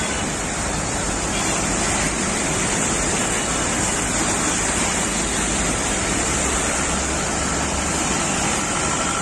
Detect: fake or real real